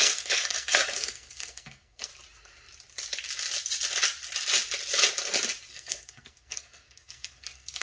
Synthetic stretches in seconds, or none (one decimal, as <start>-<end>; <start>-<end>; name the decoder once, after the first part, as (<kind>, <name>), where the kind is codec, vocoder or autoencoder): 0.0-2.1 (codec, SNAC); 5.7-7.8